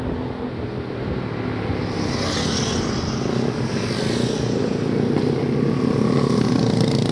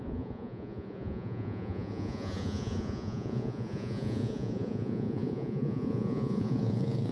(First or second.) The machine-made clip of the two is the second